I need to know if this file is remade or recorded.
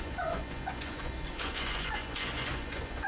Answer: remade